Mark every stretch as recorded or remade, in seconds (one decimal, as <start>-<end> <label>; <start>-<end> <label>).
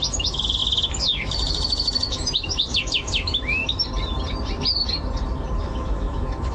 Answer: 0.0-3.6 remade; 3.6-5.7 recorded; 5.7-6.5 remade